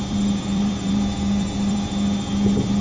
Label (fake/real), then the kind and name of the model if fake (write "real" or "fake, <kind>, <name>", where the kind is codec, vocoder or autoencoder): fake, vocoder, BigVGAN v2